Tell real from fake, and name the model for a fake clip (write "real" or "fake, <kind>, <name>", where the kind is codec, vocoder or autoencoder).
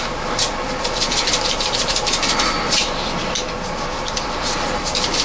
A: fake, vocoder, BigVGAN v2